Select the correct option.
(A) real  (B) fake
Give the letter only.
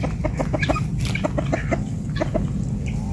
A